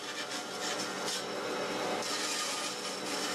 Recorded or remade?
recorded